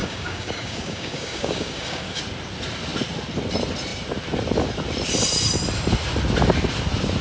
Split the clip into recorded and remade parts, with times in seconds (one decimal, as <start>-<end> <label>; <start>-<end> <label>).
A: 0.0-2.2 remade; 2.2-7.2 recorded